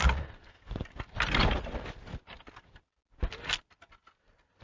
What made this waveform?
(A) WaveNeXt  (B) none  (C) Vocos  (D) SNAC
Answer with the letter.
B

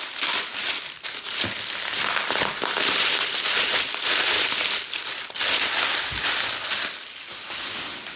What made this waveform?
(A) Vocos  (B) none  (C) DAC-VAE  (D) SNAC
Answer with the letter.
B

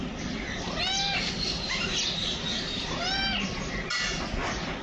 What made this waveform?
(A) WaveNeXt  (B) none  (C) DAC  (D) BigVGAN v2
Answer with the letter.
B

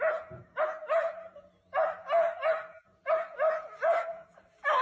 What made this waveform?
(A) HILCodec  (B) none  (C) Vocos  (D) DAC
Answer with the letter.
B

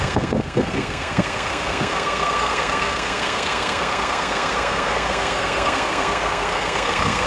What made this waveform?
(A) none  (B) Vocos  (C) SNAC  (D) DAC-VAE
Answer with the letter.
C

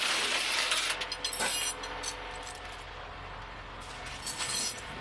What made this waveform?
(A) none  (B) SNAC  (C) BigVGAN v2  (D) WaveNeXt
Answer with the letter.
A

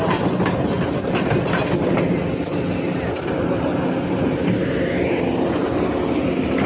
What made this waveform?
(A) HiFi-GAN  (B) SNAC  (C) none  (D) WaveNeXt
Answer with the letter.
C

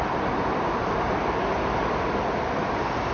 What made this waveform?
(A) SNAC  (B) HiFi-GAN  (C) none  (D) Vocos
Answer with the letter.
C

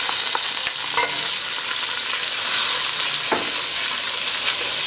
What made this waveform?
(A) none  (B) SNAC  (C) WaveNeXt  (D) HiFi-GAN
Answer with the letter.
A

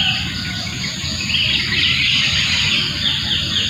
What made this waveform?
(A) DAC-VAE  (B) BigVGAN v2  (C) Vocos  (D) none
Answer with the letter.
D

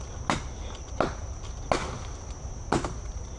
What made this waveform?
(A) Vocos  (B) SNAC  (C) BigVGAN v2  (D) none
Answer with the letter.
D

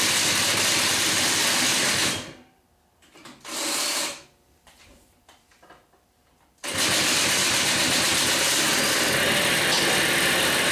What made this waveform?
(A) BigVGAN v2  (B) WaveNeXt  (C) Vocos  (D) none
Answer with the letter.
A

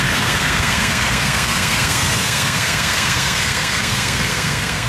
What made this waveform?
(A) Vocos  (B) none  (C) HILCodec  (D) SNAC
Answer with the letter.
D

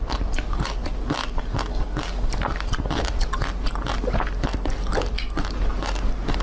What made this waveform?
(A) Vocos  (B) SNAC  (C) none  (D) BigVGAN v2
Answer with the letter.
C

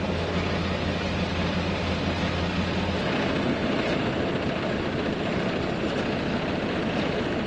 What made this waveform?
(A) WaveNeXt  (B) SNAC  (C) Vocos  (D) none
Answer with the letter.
D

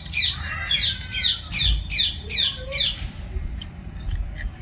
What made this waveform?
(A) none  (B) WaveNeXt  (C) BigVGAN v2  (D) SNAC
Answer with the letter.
A